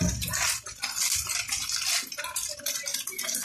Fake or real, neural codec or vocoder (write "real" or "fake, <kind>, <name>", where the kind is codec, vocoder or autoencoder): real